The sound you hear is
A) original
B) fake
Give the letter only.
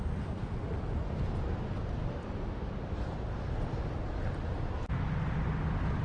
A